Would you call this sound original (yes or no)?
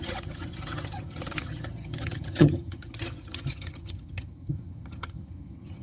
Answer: no